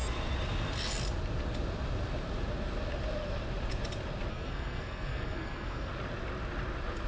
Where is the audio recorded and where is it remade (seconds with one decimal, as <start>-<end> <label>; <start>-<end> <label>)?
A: 0.0-4.3 recorded; 4.3-5.9 remade; 5.9-7.1 recorded